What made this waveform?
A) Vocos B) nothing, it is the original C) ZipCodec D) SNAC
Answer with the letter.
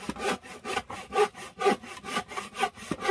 B